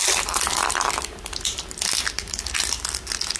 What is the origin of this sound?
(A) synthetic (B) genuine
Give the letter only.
B